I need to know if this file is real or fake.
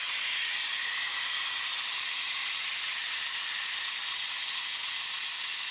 real